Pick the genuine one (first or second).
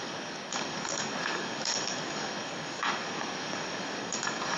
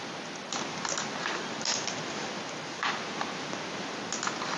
second